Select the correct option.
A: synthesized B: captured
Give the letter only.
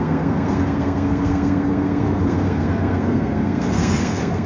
A